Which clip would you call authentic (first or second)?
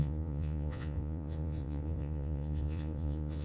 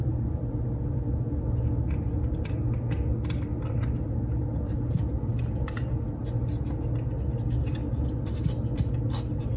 second